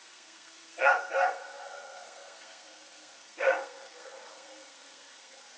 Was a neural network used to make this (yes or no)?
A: yes